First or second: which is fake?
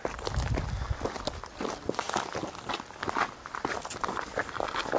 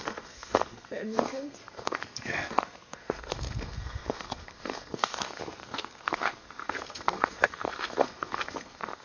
second